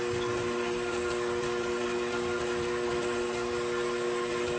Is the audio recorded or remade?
recorded